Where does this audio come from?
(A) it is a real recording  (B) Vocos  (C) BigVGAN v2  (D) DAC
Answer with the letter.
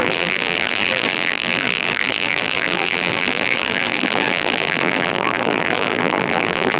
C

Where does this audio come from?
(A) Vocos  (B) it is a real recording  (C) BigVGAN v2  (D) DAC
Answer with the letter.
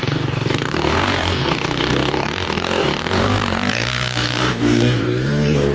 D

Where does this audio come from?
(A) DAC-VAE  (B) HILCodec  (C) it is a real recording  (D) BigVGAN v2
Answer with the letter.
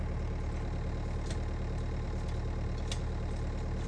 C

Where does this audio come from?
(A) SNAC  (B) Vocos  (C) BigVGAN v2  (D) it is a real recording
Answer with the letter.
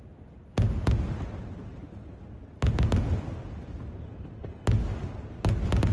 D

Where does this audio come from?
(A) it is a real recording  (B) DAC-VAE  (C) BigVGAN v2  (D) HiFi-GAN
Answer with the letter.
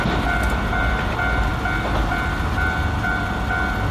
A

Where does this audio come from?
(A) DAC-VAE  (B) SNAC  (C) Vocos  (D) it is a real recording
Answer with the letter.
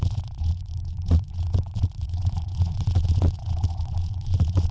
C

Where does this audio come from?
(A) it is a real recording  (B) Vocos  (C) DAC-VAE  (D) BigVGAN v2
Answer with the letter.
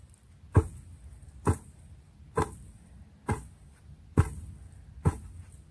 A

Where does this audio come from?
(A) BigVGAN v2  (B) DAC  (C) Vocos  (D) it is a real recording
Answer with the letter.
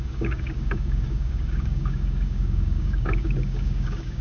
B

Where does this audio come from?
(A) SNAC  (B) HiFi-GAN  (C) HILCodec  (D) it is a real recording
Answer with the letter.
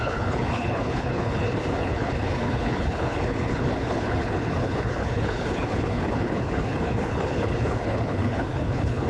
C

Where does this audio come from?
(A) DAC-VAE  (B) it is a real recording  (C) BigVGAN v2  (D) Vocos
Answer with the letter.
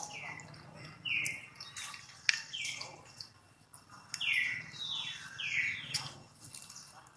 B